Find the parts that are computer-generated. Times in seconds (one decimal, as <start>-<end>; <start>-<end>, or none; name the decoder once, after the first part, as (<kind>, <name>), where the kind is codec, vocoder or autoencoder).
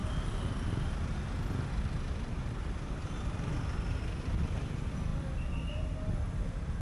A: none